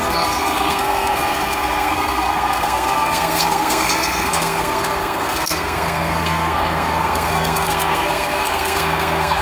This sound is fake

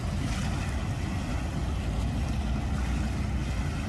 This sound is real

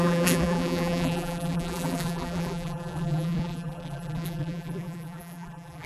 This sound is fake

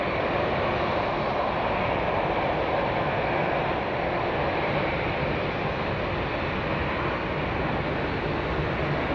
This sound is real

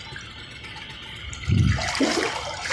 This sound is real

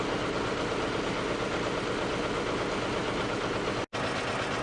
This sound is real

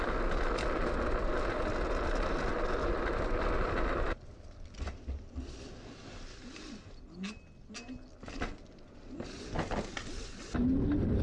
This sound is real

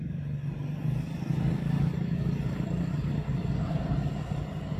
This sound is real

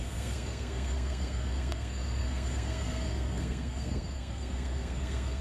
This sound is fake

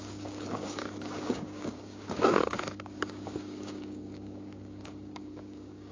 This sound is fake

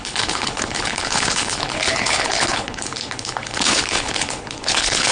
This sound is fake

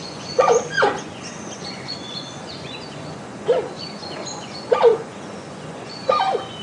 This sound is fake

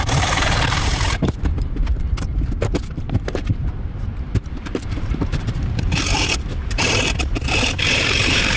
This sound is fake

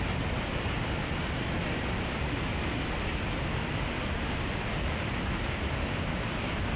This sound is real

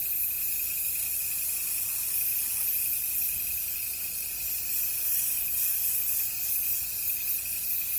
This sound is real